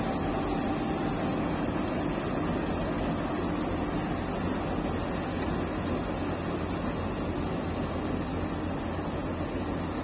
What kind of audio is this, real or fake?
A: real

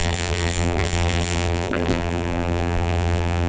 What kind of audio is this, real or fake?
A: fake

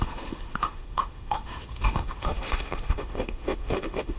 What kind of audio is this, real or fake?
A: fake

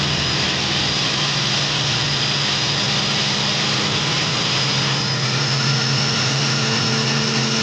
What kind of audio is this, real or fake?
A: real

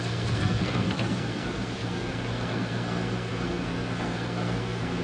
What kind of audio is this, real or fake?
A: fake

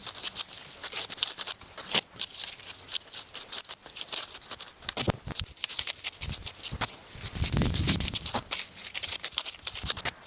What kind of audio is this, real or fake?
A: real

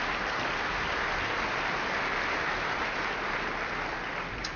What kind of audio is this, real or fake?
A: real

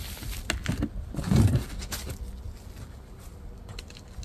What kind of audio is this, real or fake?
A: real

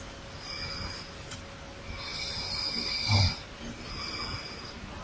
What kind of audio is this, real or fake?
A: real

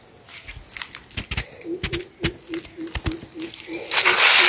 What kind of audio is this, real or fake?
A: real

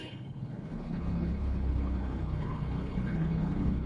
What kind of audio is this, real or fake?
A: fake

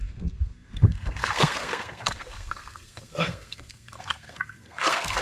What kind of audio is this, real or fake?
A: fake